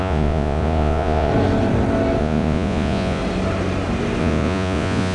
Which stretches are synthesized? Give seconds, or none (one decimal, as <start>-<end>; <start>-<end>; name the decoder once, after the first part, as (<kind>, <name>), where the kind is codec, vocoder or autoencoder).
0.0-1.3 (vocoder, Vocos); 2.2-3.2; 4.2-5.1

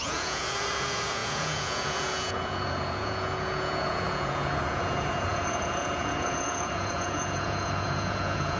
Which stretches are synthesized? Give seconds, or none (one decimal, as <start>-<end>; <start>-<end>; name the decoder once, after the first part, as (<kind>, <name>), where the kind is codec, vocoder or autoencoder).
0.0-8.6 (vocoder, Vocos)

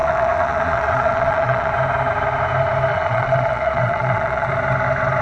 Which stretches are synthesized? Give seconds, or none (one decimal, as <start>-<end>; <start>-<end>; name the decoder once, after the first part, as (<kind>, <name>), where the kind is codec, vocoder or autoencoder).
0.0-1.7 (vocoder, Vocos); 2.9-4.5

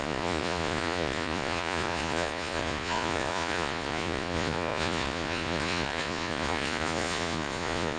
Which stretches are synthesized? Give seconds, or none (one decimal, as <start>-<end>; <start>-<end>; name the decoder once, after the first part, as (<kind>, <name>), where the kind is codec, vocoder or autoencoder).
0.0-8.0 (vocoder, Vocos)